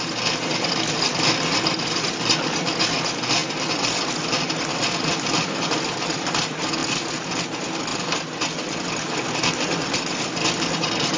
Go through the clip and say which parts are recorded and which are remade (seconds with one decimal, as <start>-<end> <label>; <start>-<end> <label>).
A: 0.0-11.2 recorded